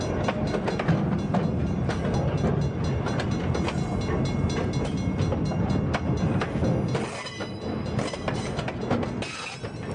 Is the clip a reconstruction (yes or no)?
no